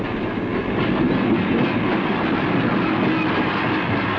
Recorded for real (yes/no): yes